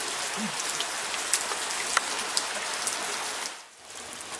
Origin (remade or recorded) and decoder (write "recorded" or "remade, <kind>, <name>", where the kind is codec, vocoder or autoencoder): recorded